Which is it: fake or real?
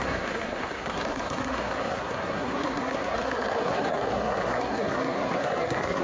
fake